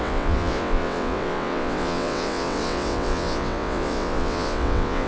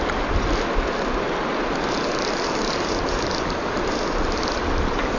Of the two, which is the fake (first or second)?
first